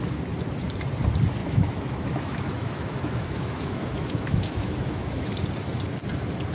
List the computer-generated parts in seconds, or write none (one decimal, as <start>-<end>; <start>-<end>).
1.4-5.3

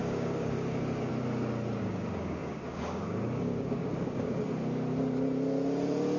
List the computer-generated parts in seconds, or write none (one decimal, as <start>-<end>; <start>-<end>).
0.0-1.1; 1.8-4.4

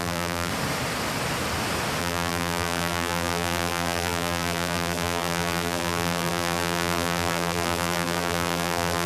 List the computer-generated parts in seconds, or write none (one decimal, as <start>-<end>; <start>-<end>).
0.0-0.5; 2.0-9.1